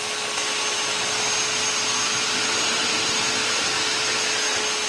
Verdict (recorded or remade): recorded